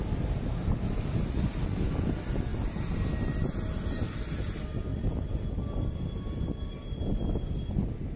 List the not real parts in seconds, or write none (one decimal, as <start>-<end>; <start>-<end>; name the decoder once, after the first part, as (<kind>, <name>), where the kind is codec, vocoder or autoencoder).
4.9-5.6 (vocoder, BigVGAN v2)